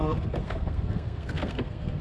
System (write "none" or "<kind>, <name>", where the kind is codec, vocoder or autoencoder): codec, SNAC